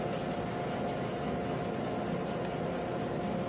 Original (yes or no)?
yes